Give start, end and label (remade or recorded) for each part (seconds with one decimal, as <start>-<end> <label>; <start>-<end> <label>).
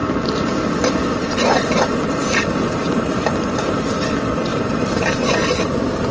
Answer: 0.0-2.2 recorded; 2.2-3.1 remade; 3.1-4.5 recorded; 4.5-6.1 remade